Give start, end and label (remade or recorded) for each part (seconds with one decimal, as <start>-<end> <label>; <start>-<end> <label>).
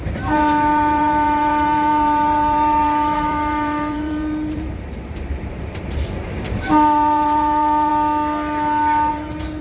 0.0-7.9 remade; 7.9-9.1 recorded; 9.1-9.6 remade